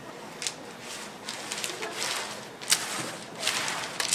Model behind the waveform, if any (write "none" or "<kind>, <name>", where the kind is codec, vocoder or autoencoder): none